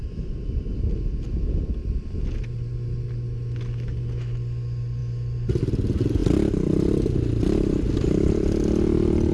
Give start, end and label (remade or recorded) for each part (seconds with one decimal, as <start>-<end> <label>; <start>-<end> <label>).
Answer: 0.0-9.3 recorded